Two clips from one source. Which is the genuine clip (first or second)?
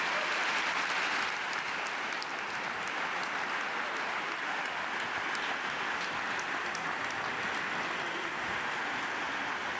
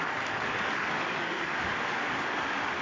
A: first